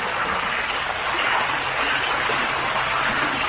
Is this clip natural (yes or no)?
yes